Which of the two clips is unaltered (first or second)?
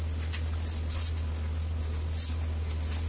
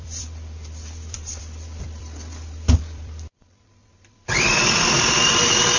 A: first